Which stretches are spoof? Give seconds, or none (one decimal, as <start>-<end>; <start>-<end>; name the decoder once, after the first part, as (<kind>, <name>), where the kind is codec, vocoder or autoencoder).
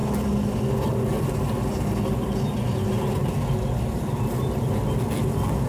none